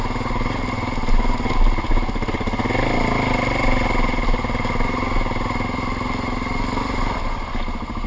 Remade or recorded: recorded